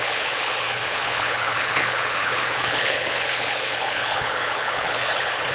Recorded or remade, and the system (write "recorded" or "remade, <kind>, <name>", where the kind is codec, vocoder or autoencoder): remade, codec, HILCodec